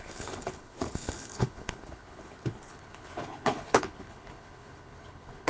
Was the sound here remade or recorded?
remade